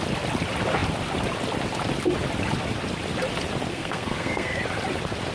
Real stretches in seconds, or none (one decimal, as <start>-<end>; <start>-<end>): 0.0-3.7; 4.6-5.3